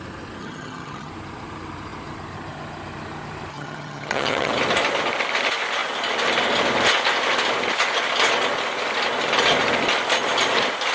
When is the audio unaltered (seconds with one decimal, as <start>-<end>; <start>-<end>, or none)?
0.0-0.4; 1.1-3.5; 4.5-10.9